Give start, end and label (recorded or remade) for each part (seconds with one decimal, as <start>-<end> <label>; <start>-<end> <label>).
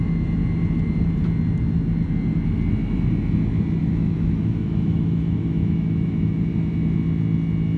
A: 0.0-0.4 remade; 0.4-3.8 recorded; 3.8-6.5 remade; 6.5-7.8 recorded